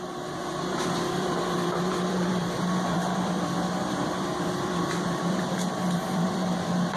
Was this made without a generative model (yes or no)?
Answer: no